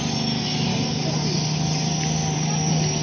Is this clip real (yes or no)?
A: yes